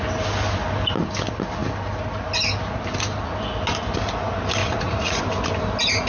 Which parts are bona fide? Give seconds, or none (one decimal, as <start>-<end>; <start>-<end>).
0.0-4.6; 5.2-6.1